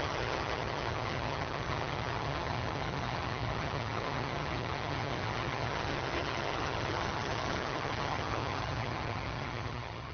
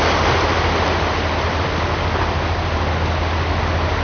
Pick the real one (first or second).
second